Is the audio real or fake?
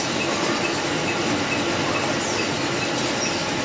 real